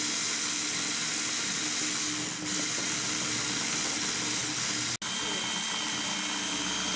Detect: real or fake real